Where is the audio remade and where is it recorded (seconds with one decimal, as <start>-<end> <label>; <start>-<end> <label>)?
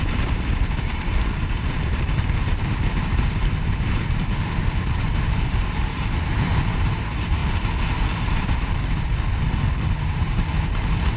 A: 0.0-7.4 remade; 7.4-8.2 recorded; 8.2-9.1 remade; 9.1-9.9 recorded; 9.9-11.2 remade